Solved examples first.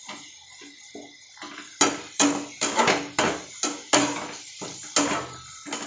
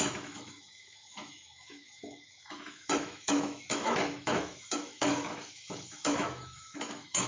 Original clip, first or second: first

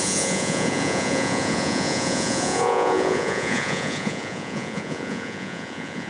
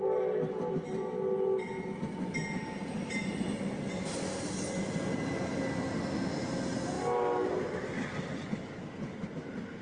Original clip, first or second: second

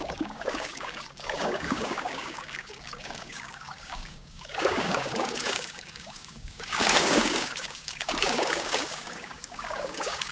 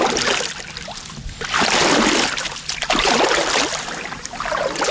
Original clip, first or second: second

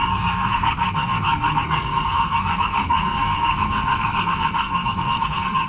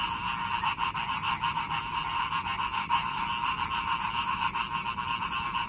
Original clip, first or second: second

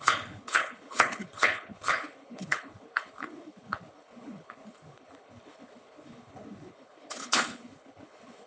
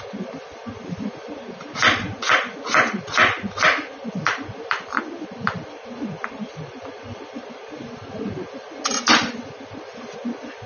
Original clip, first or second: second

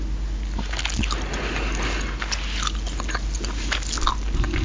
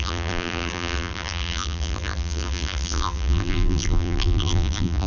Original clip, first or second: first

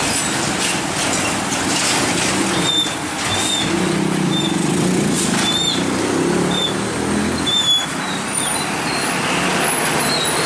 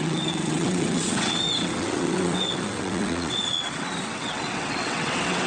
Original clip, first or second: first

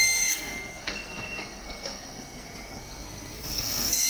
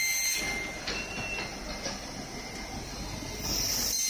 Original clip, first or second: second